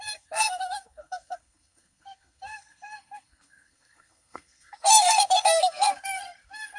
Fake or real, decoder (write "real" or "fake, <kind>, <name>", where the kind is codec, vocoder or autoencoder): fake, codec, SNAC